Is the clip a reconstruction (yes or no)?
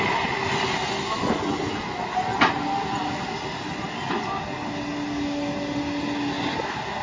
no